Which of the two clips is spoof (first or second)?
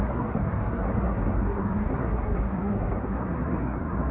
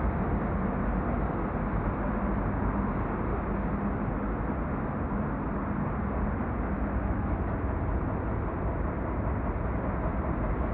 first